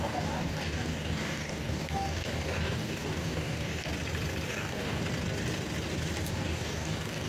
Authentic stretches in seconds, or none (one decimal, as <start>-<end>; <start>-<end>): 3.9-4.5; 5.0-6.2